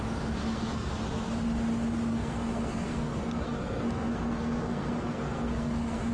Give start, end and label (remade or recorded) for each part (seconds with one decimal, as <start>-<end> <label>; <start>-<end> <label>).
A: 0.0-0.4 recorded; 0.4-0.9 remade; 0.9-2.1 recorded; 2.1-6.1 remade